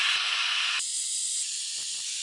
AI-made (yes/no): yes